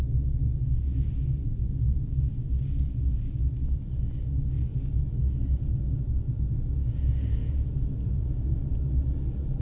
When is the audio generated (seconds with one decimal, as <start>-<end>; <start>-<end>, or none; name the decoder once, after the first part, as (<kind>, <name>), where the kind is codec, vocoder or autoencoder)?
4.7-5.2 (vocoder, Vocos); 7.4-8.8